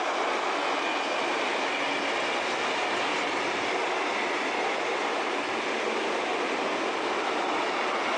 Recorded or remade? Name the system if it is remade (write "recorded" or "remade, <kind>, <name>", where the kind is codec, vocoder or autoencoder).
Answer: recorded